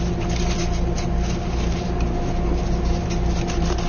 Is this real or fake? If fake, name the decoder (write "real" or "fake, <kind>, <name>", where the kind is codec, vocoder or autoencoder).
real